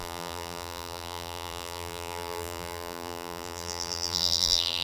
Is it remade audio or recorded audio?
remade